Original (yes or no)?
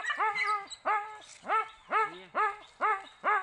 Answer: yes